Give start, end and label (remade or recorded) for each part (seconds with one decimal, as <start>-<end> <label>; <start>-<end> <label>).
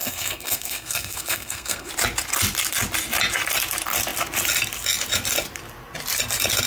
0.0-1.9 remade; 1.9-6.7 recorded